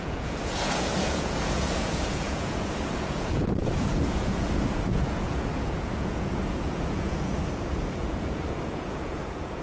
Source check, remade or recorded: remade